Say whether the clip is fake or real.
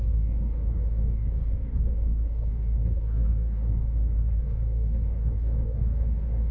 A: fake